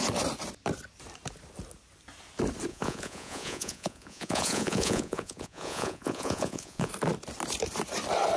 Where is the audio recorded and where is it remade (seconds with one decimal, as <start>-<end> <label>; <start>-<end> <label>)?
0.0-2.7 recorded; 2.7-6.9 remade; 6.9-8.4 recorded